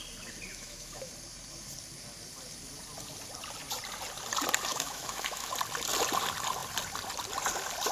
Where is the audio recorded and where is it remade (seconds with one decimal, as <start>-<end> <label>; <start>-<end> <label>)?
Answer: 0.0-0.5 recorded; 0.5-1.1 remade; 1.1-4.7 recorded; 4.7-5.5 remade; 5.5-7.9 recorded